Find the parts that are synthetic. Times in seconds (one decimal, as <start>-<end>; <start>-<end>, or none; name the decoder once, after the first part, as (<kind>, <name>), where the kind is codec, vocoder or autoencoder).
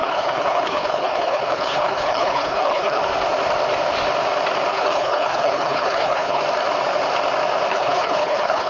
0.0-3.0 (codec, HILCodec); 4.7-6.4; 7.7-8.7